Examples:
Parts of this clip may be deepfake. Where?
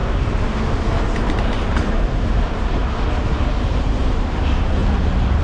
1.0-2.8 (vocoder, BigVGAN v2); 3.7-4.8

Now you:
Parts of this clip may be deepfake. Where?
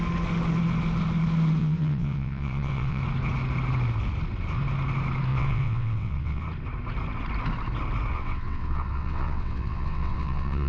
1.6-3.0 (vocoder, WaveNeXt); 5.3-6.4; 8.1-10.7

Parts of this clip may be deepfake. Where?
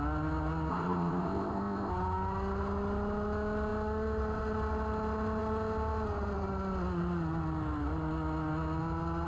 0.7-1.9 (codec, ZipCodec)